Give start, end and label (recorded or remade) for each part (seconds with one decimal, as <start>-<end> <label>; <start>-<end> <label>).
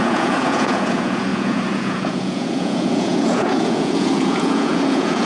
0.0-5.3 remade